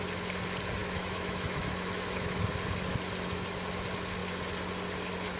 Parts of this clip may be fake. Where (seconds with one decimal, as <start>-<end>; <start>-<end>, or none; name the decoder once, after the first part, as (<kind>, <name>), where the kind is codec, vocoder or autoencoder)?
0.8-2.4 (autoencoder, DAC-VAE)